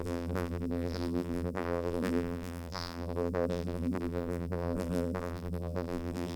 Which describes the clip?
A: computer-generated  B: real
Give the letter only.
A